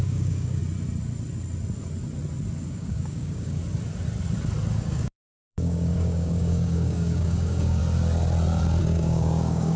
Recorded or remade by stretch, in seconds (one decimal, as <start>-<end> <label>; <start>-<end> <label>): 0.0-0.6 remade; 0.6-2.7 recorded; 2.7-3.6 remade; 3.6-4.8 recorded; 4.8-7.8 remade; 7.8-8.8 recorded; 8.8-9.8 remade

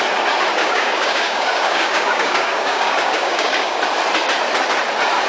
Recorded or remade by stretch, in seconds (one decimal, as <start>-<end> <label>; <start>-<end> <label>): 0.0-0.6 recorded; 0.6-3.8 remade; 3.8-5.3 recorded

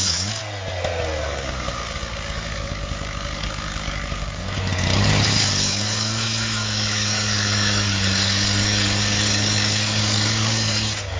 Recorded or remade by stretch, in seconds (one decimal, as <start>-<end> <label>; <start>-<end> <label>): 0.0-0.4 remade; 0.4-1.2 recorded; 1.2-11.2 remade

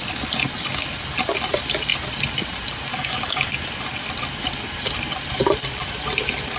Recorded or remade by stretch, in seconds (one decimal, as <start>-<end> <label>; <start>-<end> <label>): 0.0-2.9 recorded; 2.9-3.5 remade; 3.5-6.6 recorded

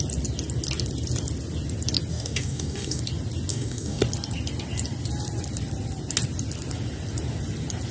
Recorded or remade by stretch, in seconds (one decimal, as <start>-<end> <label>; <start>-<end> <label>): 0.0-2.1 recorded; 2.1-3.0 remade; 3.0-3.5 recorded; 3.5-4.0 remade; 4.0-7.9 recorded

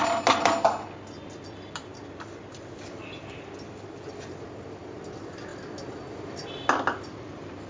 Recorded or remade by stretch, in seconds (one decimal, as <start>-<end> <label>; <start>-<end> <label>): 0.0-7.7 recorded

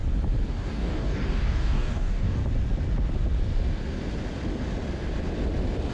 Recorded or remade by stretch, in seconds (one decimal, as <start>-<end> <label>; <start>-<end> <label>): 0.0-0.5 recorded; 0.5-2.4 remade; 2.4-5.9 recorded